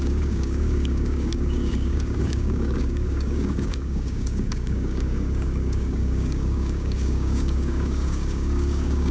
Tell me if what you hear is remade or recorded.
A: remade